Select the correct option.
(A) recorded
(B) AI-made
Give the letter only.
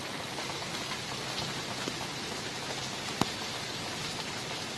A